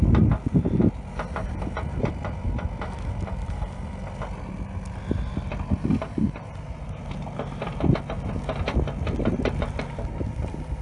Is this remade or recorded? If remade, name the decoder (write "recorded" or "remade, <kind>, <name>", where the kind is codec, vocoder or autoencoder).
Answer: recorded